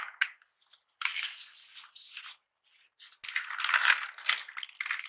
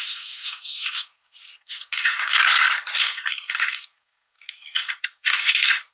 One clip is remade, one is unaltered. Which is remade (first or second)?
second